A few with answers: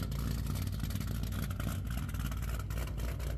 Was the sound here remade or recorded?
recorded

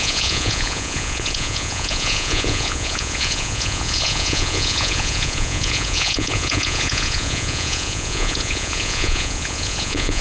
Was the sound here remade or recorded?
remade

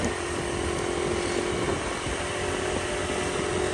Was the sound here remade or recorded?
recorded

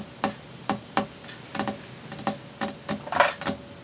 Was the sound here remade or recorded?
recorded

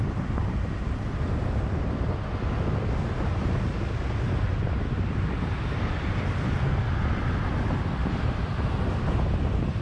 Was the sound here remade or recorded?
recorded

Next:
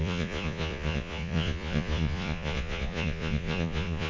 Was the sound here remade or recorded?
remade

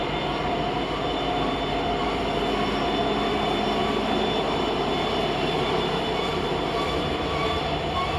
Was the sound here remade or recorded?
recorded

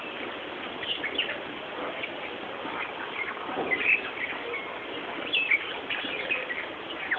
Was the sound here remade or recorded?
recorded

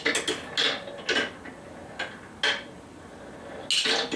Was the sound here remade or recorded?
recorded